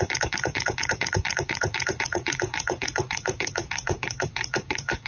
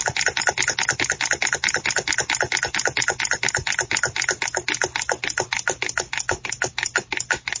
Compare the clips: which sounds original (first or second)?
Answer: second